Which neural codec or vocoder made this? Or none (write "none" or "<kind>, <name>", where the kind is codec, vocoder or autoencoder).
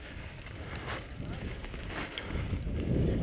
codec, DAC